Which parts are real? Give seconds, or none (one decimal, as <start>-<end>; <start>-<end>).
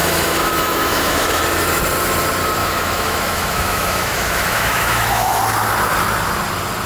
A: 1.4-2.6; 5.4-6.9